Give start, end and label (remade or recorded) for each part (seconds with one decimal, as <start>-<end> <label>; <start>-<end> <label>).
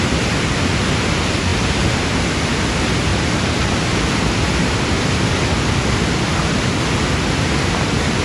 0.0-3.1 recorded; 3.1-5.5 remade; 5.5-8.2 recorded